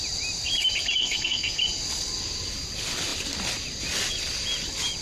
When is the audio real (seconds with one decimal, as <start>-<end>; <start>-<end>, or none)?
0.0-1.0; 1.6-5.0